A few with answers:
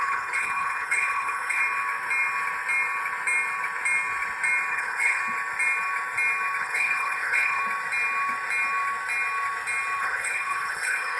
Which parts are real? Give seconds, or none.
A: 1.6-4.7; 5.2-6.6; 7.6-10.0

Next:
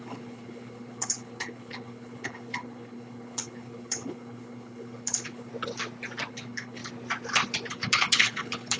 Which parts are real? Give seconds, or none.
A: 5.5-6.3; 6.8-7.7

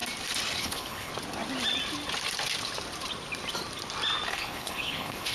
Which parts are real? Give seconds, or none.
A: 0.0-0.6; 1.1-4.3

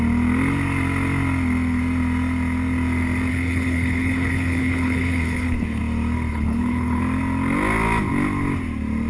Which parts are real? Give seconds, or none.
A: 0.0-3.3; 5.8-6.3; 7.0-9.1

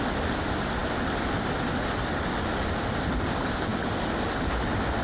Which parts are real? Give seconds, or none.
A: 0.0-5.0

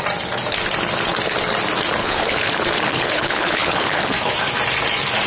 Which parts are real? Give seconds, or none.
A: 0.0-2.0; 2.5-2.9; 4.0-5.3

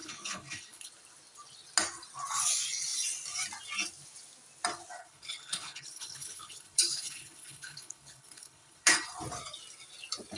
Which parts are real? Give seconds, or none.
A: 0.9-5.0; 9.0-10.4

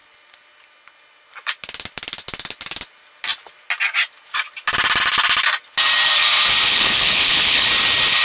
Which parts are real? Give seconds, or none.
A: 0.0-6.7; 7.7-8.2